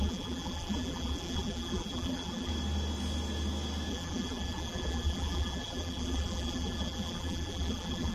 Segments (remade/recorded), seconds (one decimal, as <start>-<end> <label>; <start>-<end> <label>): 0.0-2.5 remade; 2.5-3.9 recorded; 3.9-8.1 remade